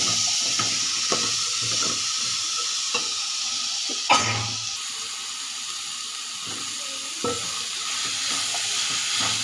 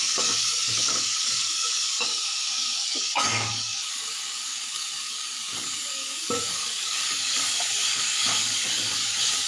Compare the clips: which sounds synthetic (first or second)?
second